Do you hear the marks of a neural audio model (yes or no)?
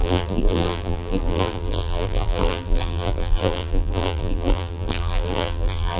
yes